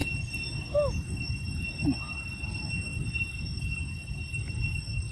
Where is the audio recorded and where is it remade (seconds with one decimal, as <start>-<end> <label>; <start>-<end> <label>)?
0.0-5.1 recorded